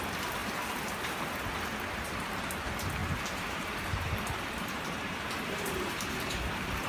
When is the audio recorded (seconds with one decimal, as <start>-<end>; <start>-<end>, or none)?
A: 0.0-3.0